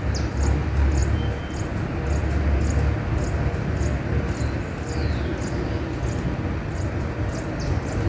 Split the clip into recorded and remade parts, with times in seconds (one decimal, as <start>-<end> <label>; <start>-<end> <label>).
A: 0.0-8.1 recorded